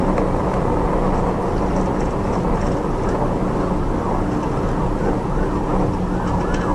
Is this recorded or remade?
recorded